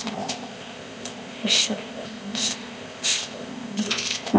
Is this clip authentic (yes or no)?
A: no